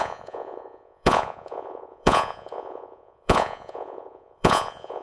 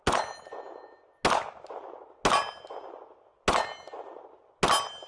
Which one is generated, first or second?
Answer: first